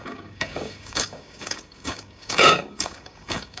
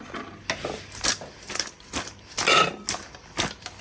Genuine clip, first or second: second